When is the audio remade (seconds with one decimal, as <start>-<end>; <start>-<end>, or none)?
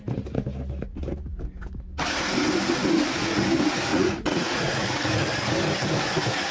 3.9-5.2